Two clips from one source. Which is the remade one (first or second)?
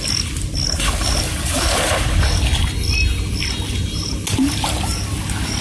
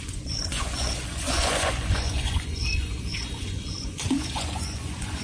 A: second